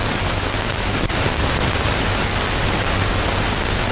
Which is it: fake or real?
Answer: real